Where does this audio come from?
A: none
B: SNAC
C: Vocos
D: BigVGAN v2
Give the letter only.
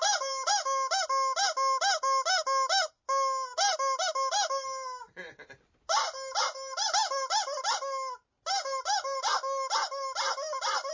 A